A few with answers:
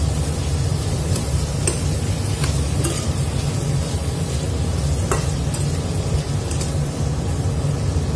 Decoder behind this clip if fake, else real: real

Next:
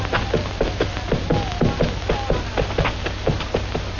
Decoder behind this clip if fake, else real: real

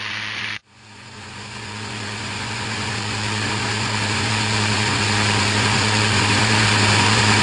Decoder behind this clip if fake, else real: fake, vocoder, Vocos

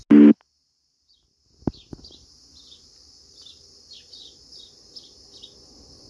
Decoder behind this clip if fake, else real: real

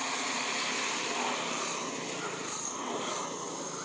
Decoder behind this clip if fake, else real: real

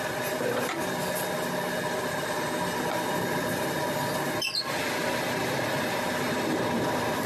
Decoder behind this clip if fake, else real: real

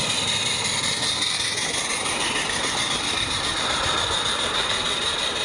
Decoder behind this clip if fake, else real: real